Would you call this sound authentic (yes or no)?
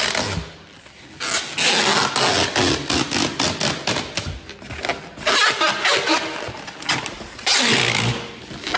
yes